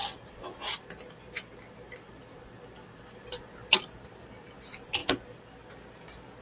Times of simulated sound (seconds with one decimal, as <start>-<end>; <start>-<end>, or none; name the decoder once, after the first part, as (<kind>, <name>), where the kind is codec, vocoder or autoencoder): 3.7-4.6 (vocoder, BigVGAN v2)